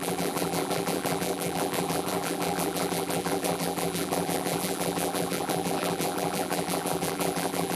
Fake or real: fake